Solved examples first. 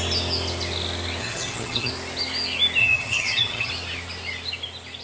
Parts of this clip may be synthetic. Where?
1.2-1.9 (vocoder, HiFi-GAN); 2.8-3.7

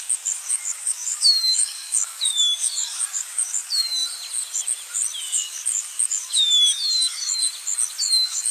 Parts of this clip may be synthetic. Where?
0.0-4.0 (codec, DAC); 5.2-7.4; 8.0-8.5

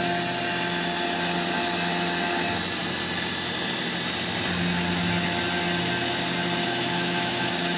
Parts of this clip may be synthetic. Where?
6.6-7.8 (autoencoder, DAC-VAE)

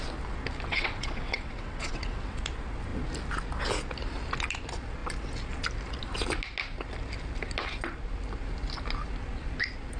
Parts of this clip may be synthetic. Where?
0.7-2.4 (vocoder, WaveNeXt)

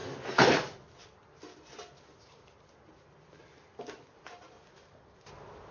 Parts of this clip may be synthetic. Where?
none